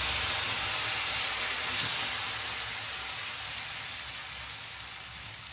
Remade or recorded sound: recorded